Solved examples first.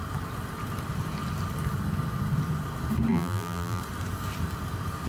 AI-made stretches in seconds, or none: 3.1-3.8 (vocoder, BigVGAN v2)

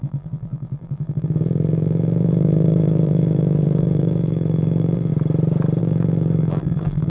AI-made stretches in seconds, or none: 0.0-5.1 (vocoder, BigVGAN v2); 5.8-7.1

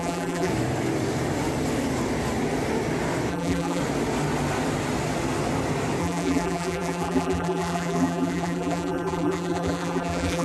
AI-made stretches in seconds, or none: 0.0-0.5 (vocoder, BigVGAN v2); 3.3-3.8; 6.0-10.4

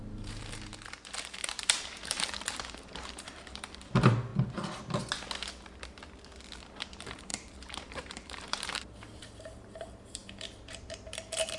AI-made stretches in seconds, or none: 0.0-4.3 (vocoder, BigVGAN v2); 6.7-11.6

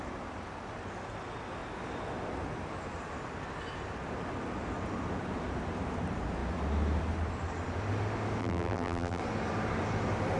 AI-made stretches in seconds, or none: 8.4-9.2 (vocoder, BigVGAN v2)